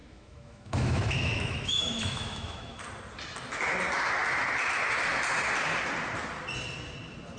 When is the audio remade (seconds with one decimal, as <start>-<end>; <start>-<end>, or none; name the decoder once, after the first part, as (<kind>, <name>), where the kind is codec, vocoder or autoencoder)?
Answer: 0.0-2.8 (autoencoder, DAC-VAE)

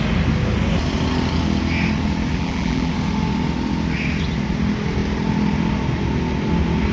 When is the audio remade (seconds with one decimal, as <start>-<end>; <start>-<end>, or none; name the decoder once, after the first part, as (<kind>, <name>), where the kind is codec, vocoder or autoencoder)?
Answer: 2.3-2.9 (vocoder, BigVGAN v2)

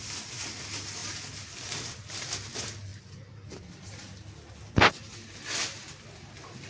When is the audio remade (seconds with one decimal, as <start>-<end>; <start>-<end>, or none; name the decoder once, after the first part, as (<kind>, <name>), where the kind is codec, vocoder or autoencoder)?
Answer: none

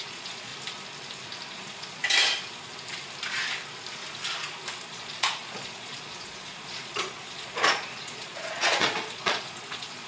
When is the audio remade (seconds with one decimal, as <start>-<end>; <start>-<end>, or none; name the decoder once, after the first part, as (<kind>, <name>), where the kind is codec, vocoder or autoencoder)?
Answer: 0.0-0.5 (vocoder, Vocos); 1.5-2.0; 4.9-10.1